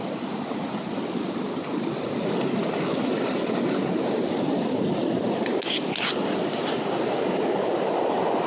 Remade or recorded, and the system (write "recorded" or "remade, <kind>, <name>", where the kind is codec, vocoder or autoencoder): recorded